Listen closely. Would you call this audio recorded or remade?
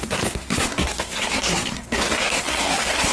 remade